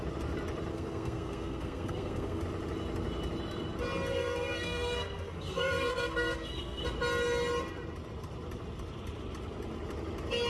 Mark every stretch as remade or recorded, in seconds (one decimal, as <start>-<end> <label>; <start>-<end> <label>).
0.0-0.7 recorded; 0.7-2.4 remade; 2.4-4.1 recorded; 4.1-6.8 remade; 6.8-10.5 recorded